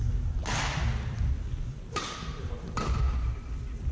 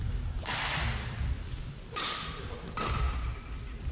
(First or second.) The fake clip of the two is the second